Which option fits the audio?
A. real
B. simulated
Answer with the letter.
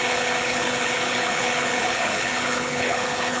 B